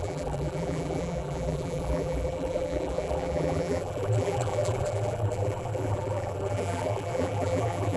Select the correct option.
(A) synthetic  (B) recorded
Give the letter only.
A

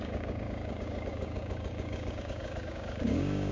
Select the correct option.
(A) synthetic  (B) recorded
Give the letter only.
A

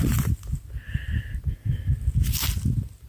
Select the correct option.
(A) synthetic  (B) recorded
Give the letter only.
B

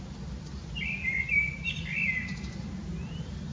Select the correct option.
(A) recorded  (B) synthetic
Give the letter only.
A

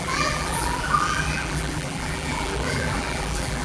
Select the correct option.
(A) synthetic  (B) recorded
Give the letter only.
A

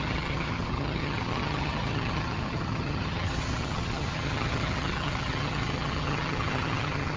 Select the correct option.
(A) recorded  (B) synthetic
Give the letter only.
B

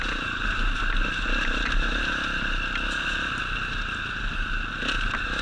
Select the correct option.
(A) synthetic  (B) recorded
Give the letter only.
B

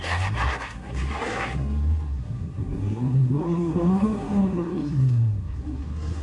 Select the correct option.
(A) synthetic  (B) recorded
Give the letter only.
A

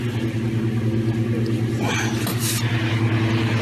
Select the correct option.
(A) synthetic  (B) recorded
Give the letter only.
B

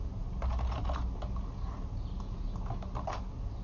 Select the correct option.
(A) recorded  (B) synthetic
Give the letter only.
A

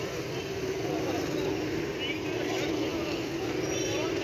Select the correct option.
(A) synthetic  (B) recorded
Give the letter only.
B